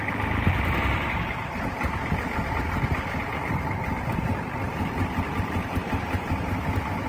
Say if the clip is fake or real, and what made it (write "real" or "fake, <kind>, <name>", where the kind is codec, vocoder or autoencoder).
real